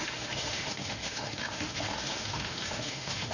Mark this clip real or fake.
fake